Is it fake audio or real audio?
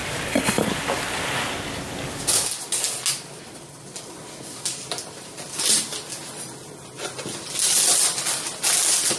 real